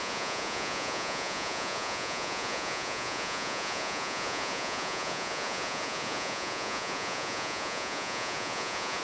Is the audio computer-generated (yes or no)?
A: yes